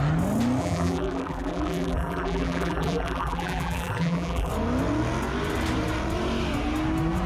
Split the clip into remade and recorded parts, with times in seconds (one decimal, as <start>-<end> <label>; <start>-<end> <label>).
0.0-0.6 recorded; 0.6-4.5 remade; 4.5-7.3 recorded